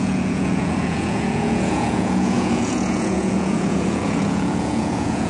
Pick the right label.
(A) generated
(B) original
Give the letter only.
A